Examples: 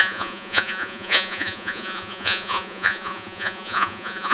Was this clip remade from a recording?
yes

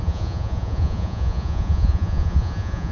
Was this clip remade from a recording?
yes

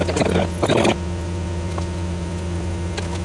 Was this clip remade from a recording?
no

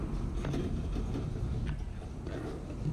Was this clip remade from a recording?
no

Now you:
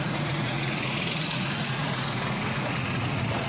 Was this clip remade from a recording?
yes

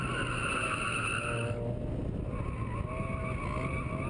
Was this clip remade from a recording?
no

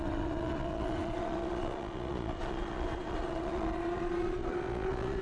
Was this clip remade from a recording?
yes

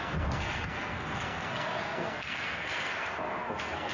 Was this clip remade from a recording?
yes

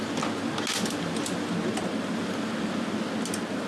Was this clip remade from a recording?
no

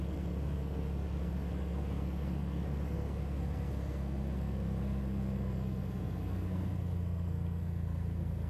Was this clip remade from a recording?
yes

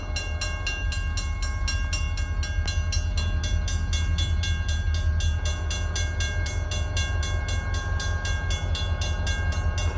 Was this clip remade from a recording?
no